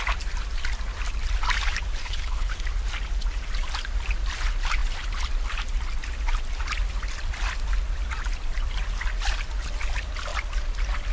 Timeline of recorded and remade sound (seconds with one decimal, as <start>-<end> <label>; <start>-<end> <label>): 0.0-2.0 recorded; 2.0-2.5 remade; 2.5-11.1 recorded